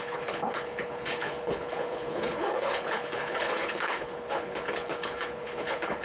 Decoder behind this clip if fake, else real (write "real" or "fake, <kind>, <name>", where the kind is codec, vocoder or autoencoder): fake, codec, HILCodec